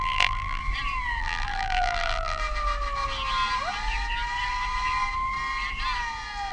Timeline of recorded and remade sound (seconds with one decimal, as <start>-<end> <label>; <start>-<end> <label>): 0.0-0.6 remade; 0.6-1.2 recorded; 1.2-2.4 remade; 2.4-6.5 recorded